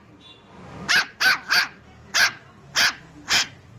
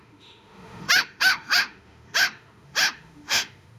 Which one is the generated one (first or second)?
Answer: second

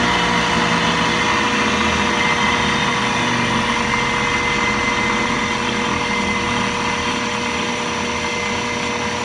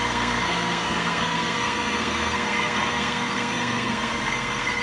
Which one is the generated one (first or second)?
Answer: second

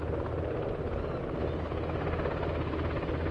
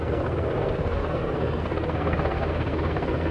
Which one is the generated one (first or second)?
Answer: second